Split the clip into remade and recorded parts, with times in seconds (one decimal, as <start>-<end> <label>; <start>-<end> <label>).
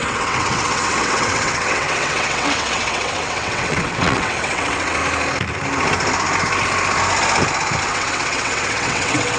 0.0-5.0 remade; 5.0-7.8 recorded; 7.8-9.4 remade